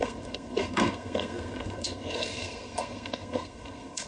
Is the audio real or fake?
fake